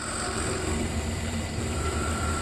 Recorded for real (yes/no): no